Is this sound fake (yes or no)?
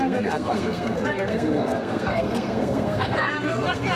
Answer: yes